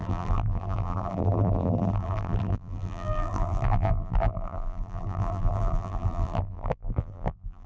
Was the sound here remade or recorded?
remade